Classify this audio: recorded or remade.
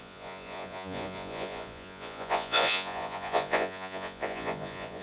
remade